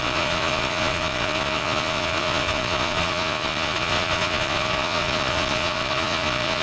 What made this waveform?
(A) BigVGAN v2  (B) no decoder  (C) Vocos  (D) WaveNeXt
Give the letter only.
C